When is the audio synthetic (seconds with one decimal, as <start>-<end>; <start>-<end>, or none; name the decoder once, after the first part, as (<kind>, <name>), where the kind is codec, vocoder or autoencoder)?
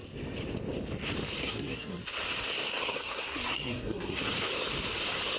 1.4-2.0 (codec, SNAC); 2.9-4.3